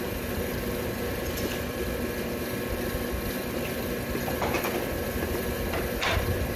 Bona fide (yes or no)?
yes